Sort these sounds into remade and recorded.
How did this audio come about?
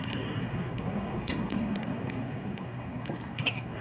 remade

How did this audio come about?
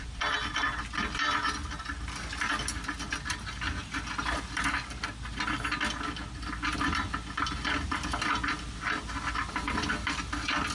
recorded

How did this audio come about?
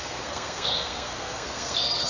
remade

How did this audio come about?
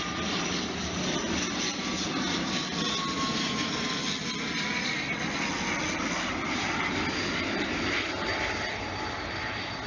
recorded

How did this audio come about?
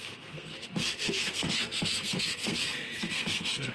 remade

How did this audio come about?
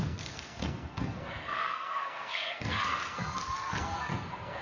remade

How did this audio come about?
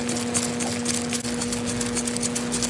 recorded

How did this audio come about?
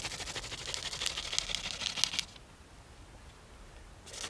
recorded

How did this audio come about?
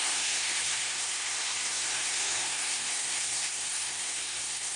remade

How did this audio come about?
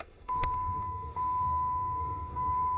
remade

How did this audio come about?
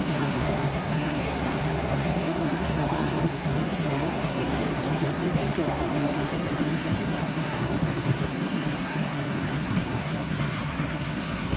remade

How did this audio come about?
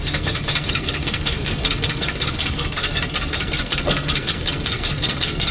remade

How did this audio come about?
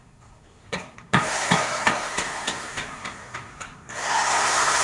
remade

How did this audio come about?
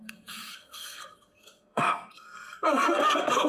remade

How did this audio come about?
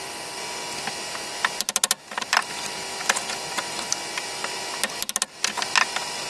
recorded